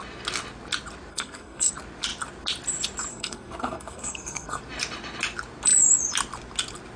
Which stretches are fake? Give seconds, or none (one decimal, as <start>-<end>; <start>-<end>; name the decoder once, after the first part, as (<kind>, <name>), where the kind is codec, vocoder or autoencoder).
1.1-1.7 (codec, SNAC); 3.1-4.6